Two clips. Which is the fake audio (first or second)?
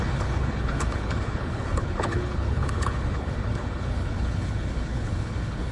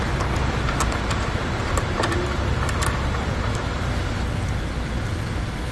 first